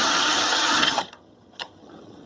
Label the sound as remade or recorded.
remade